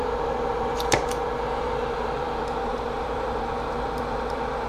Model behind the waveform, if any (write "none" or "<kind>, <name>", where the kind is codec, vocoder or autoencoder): vocoder, BigVGAN v2